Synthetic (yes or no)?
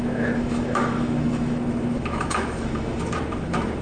yes